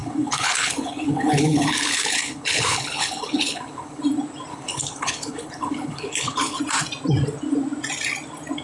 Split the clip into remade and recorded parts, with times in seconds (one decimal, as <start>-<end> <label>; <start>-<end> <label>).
0.0-4.0 remade; 4.0-4.5 recorded; 4.5-6.6 remade; 6.6-8.6 recorded